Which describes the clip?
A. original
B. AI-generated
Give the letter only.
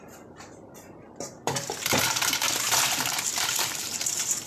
B